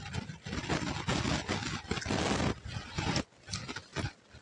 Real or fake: real